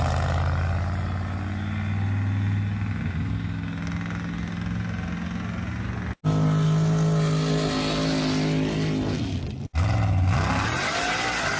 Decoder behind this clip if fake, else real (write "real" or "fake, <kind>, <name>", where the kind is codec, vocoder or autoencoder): real